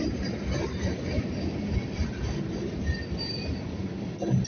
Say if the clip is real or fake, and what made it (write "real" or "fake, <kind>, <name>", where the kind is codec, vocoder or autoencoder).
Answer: real